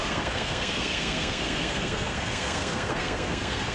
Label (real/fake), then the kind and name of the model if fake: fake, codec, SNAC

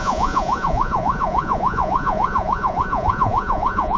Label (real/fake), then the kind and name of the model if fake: fake, vocoder, Vocos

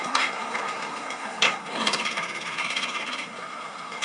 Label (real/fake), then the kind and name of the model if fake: fake, codec, SNAC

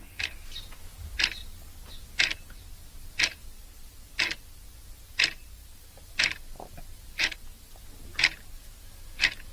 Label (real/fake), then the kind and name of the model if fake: real